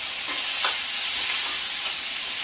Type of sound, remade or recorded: recorded